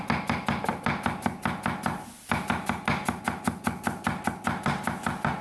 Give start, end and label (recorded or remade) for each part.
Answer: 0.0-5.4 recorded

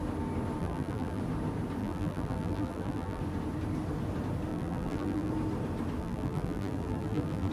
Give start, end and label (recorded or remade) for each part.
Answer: 0.0-0.6 recorded; 0.6-1.2 remade; 1.2-1.8 recorded; 1.8-3.2 remade; 3.2-4.5 recorded; 4.5-5.3 remade; 5.3-6.0 recorded; 6.0-7.5 remade

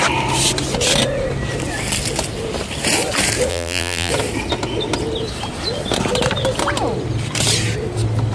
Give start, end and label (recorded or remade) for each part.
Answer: 0.0-3.5 recorded; 3.5-4.1 remade; 4.1-8.3 recorded